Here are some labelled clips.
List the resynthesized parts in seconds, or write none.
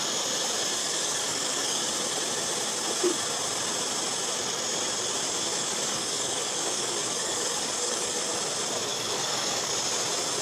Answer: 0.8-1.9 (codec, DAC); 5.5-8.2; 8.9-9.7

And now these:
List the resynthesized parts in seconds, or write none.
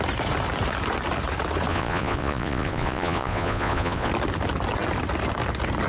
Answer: 1.7-4.1 (vocoder, Vocos)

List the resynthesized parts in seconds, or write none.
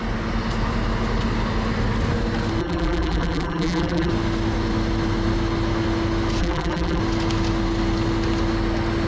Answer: 2.6-4.1 (vocoder, BigVGAN v2); 6.4-7.0